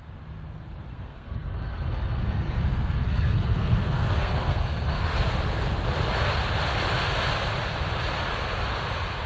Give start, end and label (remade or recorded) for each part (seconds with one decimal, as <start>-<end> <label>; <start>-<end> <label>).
0.0-0.9 recorded; 0.9-5.3 remade; 5.3-9.3 recorded